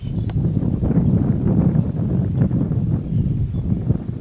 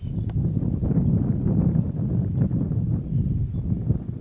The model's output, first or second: first